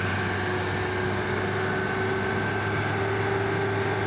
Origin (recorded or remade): recorded